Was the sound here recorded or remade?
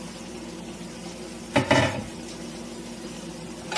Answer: recorded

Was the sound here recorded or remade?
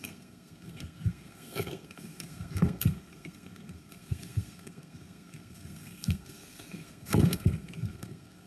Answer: remade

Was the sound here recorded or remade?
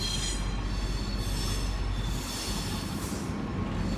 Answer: recorded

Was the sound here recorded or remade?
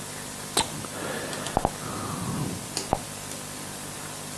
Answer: recorded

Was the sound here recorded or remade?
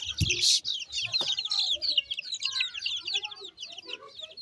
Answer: recorded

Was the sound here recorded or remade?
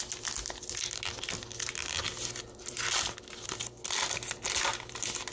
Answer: recorded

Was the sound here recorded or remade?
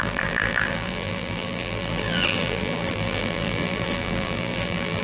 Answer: remade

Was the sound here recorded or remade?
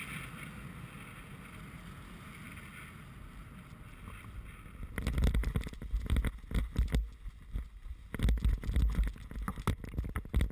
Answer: recorded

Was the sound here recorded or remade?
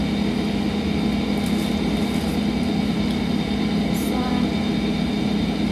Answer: recorded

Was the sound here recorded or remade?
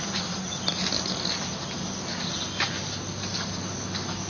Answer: recorded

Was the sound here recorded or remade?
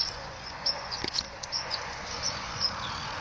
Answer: remade